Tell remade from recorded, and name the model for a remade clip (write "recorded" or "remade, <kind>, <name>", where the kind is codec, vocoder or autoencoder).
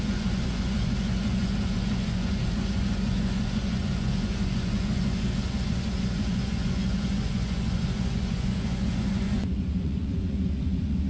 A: remade, vocoder, Vocos